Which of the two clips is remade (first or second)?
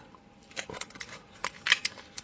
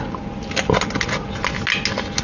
first